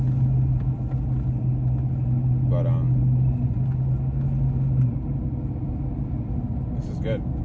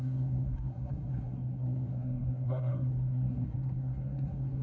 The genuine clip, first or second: first